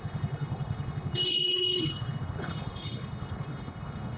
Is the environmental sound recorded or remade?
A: remade